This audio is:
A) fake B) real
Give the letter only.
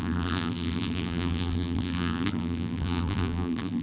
A